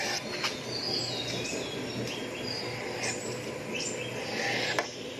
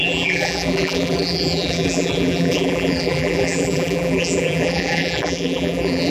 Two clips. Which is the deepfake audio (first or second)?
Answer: second